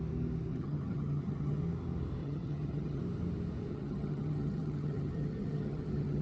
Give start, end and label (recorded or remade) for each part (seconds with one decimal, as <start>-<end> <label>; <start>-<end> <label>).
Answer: 0.0-0.5 recorded; 0.5-1.6 remade; 1.6-2.2 recorded; 2.2-3.0 remade; 3.0-3.7 recorded; 3.7-6.2 remade